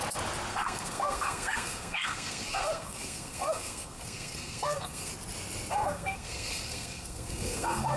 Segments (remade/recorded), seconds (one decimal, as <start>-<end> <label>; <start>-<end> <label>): 0.0-0.5 recorded; 0.5-5.1 remade; 5.1-5.7 recorded; 5.7-8.0 remade